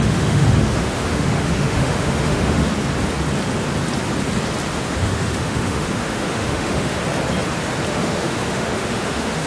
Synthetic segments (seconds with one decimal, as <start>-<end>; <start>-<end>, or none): 0.0-2.7; 4.7-7.0; 7.9-9.5